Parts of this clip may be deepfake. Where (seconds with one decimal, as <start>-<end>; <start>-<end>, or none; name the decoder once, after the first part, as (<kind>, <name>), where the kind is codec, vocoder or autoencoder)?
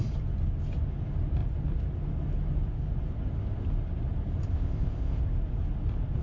4.5-5.2 (codec, ZipCodec)